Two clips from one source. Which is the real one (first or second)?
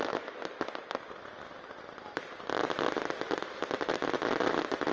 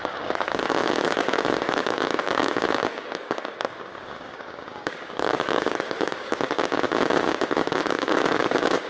first